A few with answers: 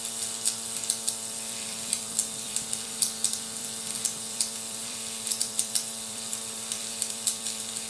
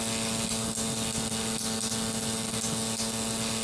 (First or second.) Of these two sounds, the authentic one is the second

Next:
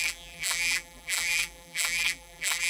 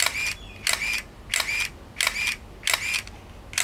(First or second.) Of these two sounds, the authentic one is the second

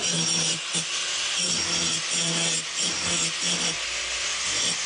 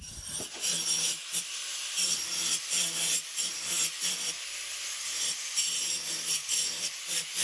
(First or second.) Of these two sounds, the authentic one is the first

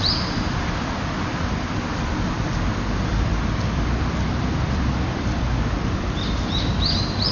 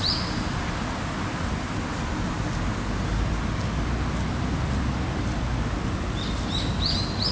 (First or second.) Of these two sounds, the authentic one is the second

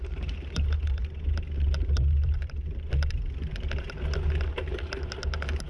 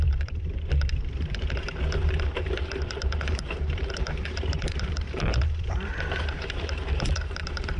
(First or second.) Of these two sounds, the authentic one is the first